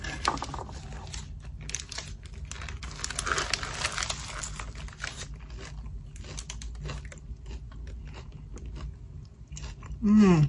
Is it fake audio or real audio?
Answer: real